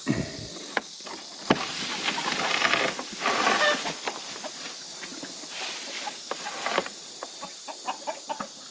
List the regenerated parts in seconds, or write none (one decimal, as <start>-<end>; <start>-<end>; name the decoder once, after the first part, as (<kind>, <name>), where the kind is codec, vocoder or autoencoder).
none